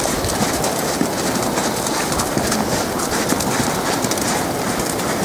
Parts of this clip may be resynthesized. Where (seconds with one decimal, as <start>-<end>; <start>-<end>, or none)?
none